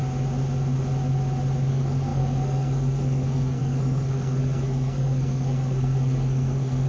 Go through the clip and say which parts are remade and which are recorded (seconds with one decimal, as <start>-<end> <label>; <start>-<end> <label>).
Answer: 0.0-1.7 recorded; 1.7-6.9 remade